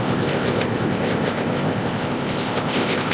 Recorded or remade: remade